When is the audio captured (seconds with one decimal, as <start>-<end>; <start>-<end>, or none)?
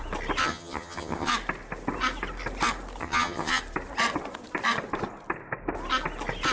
0.0-0.4; 1.3-3.0; 3.6-6.5